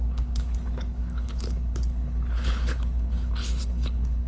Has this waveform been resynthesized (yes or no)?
yes